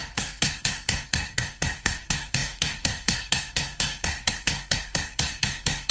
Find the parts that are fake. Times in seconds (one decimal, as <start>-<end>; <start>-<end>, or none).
0.0-5.9